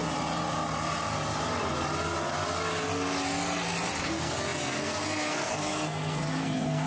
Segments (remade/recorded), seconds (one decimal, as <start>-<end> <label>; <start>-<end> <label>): 0.0-4.1 recorded; 4.1-6.9 remade